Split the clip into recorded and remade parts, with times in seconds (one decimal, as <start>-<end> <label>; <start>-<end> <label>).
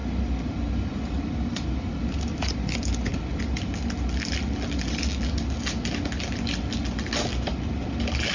0.0-8.3 recorded